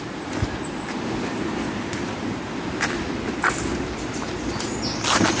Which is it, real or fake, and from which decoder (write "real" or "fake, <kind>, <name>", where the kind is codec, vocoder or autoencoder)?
real